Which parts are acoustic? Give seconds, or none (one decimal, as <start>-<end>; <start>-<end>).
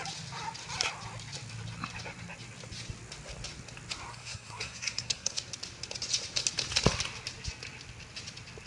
0.0-4.1; 5.4-8.7